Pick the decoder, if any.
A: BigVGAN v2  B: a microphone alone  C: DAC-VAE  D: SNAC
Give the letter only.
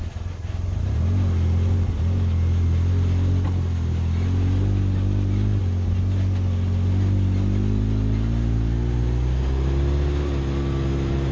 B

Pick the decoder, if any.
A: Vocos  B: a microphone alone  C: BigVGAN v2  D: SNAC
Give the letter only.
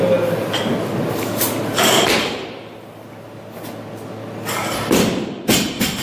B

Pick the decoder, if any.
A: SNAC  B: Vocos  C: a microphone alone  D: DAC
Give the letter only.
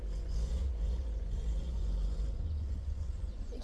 B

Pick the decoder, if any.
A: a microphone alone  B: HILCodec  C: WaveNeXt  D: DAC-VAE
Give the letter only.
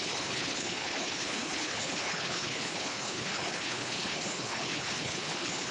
B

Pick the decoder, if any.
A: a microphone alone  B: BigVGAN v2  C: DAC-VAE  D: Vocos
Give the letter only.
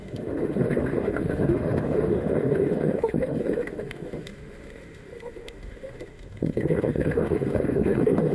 C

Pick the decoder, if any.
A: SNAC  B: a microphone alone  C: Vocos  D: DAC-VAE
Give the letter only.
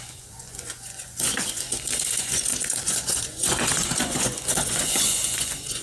C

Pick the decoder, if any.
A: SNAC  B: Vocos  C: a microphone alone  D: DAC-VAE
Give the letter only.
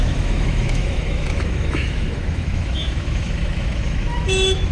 D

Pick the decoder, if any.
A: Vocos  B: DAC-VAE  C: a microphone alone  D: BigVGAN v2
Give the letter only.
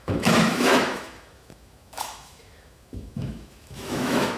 B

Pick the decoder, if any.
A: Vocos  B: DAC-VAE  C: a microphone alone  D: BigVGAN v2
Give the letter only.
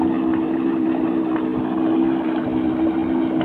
C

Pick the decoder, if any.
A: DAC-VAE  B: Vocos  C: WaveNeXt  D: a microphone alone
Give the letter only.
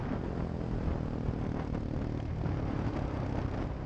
D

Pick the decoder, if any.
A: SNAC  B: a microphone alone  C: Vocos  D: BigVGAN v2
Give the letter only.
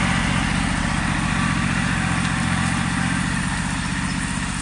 B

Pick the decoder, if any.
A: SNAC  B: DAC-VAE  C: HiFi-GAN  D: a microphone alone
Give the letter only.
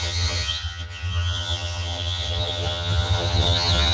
C